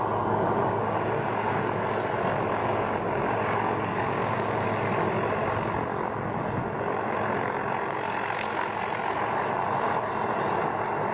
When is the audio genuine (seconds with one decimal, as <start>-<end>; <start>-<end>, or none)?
0.0-0.8; 1.6-2.6; 4.6-11.1